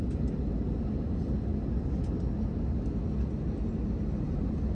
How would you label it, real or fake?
real